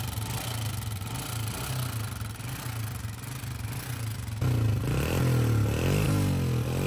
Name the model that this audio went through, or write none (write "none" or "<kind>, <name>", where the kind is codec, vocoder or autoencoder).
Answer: none